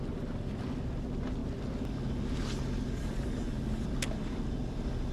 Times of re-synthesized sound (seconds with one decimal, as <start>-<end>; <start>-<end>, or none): none